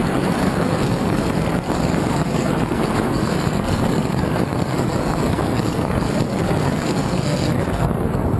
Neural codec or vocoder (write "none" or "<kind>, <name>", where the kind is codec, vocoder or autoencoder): codec, SNAC